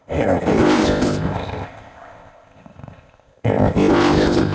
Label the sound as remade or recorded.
remade